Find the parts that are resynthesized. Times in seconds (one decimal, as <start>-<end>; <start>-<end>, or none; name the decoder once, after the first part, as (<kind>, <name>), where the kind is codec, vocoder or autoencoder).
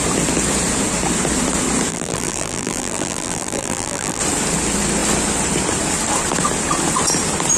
1.9-4.2 (vocoder, BigVGAN v2)